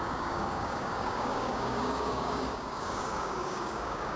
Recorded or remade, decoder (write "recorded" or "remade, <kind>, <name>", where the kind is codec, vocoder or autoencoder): remade, codec, DAC